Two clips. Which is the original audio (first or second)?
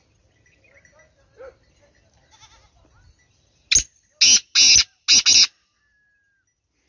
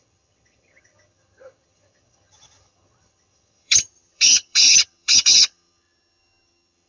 first